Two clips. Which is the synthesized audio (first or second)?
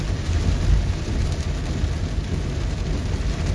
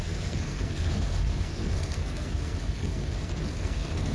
second